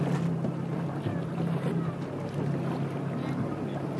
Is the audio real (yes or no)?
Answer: yes